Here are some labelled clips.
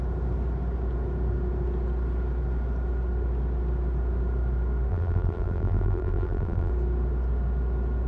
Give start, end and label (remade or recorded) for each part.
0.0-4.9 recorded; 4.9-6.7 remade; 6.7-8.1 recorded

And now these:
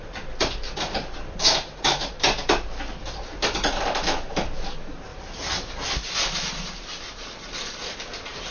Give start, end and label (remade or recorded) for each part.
0.0-5.1 recorded; 5.1-5.7 remade; 5.7-8.5 recorded

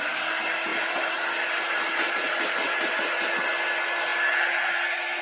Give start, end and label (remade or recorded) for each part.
0.0-0.7 recorded; 0.7-2.1 remade; 2.1-5.2 recorded

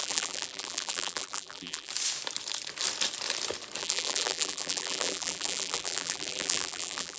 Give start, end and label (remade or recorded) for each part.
0.0-1.9 remade; 1.9-3.8 recorded; 3.8-7.2 remade

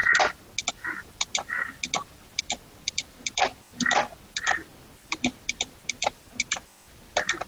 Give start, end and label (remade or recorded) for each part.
0.0-0.7 recorded; 0.7-1.3 remade; 1.3-2.0 recorded; 2.0-7.5 remade